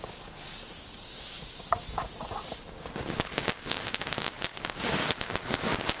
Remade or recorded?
remade